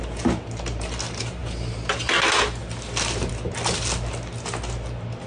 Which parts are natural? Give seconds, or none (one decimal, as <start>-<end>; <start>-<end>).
0.0-5.3